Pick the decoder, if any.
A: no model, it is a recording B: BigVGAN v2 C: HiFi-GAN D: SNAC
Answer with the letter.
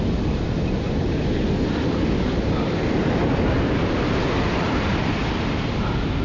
A